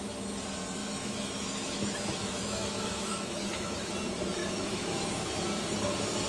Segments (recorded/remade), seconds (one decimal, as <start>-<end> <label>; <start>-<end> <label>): 0.0-0.8 recorded; 0.8-3.9 remade; 3.9-4.4 recorded; 4.4-5.4 remade; 5.4-6.3 recorded